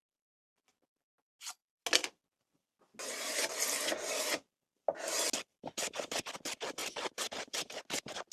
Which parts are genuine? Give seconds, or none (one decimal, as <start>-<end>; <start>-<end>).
0.0-6.8; 7.8-8.3